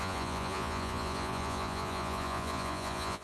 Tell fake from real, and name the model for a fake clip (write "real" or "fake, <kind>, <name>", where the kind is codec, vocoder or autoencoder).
fake, vocoder, Vocos